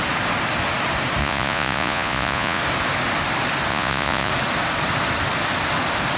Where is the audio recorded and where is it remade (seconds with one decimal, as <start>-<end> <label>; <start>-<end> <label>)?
0.0-1.2 recorded; 1.2-2.6 remade; 2.6-3.7 recorded; 3.7-4.3 remade; 4.3-6.2 recorded